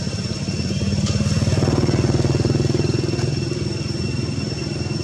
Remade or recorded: recorded